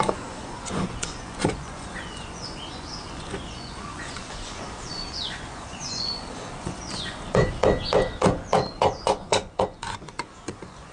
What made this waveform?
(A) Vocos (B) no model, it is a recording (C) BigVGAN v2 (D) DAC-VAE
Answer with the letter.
A